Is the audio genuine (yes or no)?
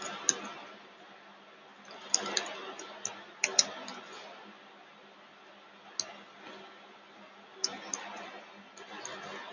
yes